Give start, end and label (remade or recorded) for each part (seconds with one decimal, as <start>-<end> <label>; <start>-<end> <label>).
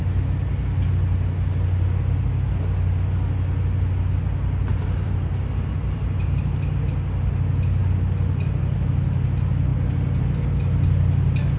0.0-4.7 recorded; 4.7-6.8 remade; 6.8-11.6 recorded